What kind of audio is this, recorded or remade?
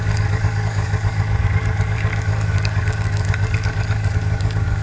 remade